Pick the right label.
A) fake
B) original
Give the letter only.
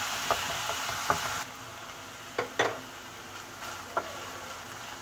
B